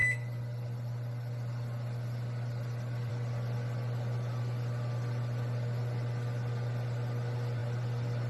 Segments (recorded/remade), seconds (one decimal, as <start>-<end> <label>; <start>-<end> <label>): 0.0-8.3 recorded